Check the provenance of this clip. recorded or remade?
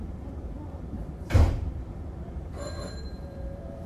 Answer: remade